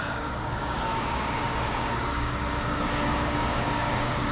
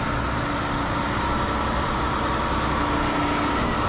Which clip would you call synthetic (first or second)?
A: first